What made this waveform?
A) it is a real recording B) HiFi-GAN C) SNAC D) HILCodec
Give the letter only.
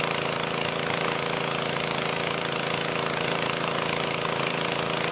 A